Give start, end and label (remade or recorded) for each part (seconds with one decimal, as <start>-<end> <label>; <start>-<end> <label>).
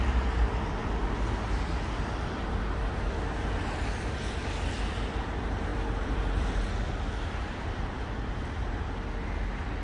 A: 0.0-9.8 recorded